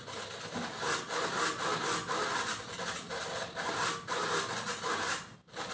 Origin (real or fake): real